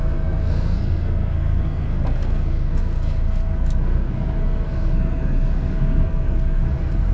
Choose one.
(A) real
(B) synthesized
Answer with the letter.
B